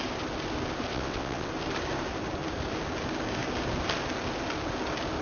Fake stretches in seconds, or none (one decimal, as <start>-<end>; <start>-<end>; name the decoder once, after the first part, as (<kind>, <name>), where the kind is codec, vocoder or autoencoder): 0.9-1.5 (vocoder, WaveNeXt)